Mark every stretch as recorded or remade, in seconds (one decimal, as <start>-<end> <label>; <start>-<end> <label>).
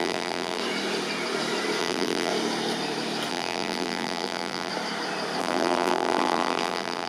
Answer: 0.0-0.6 remade; 0.6-1.8 recorded; 1.8-2.3 remade; 2.3-3.3 recorded; 3.3-4.7 remade; 4.7-5.4 recorded; 5.4-7.1 remade